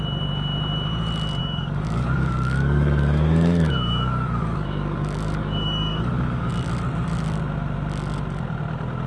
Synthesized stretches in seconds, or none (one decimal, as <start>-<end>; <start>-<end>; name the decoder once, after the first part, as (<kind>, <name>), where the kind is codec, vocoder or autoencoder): 1.4-6.5 (codec, DAC)